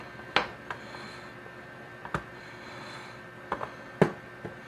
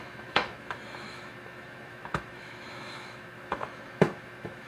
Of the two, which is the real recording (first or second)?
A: first